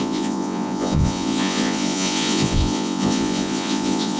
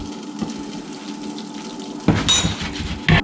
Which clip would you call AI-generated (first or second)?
first